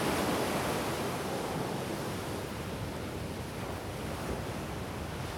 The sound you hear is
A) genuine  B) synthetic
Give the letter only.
A